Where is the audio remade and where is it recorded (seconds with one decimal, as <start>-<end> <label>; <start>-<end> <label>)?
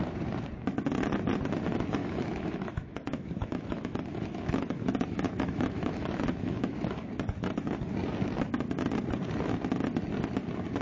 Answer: 0.0-2.0 recorded; 2.0-7.1 remade; 7.1-10.8 recorded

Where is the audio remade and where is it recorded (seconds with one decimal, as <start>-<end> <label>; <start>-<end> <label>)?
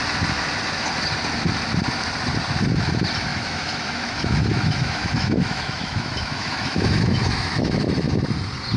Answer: 0.0-3.3 recorded; 3.3-8.1 remade; 8.1-8.8 recorded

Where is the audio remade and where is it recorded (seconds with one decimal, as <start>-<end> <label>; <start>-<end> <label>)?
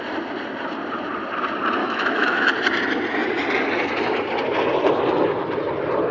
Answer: 0.0-1.8 recorded; 1.8-2.5 remade; 2.5-6.1 recorded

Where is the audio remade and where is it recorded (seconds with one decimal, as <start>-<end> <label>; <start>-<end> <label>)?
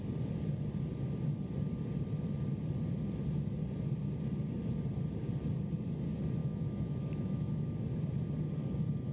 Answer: 0.0-6.4 recorded; 6.4-7.8 remade; 7.8-9.1 recorded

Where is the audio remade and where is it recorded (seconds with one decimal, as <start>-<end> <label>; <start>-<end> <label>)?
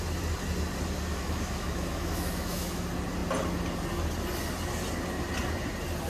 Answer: 0.0-1.1 recorded; 1.1-2.7 remade; 2.7-6.1 recorded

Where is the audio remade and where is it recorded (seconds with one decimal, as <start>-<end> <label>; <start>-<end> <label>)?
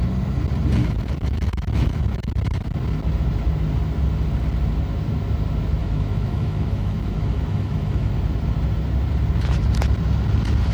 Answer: 0.0-0.8 recorded; 0.8-2.3 remade; 2.3-5.8 recorded; 5.8-8.1 remade; 8.1-10.7 recorded